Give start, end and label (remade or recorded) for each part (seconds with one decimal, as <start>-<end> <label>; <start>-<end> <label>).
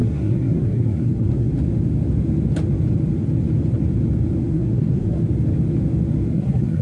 0.0-1.5 remade; 1.5-4.5 recorded; 4.5-5.2 remade; 5.2-6.3 recorded; 6.3-6.8 remade